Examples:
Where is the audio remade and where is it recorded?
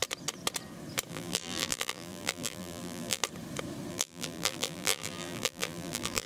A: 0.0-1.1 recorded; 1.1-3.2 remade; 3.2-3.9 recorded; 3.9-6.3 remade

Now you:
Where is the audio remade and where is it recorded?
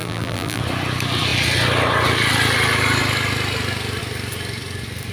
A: 0.0-0.6 remade; 0.6-5.1 recorded